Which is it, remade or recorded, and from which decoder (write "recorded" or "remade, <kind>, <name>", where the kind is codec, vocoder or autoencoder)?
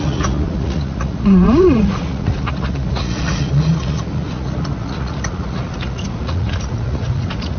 remade, vocoder, Vocos